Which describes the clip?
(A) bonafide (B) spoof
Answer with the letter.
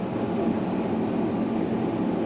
A